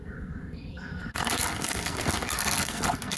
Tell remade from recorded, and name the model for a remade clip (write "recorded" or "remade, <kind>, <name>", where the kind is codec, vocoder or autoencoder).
remade, codec, SNAC